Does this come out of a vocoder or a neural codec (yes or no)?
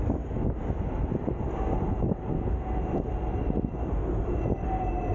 no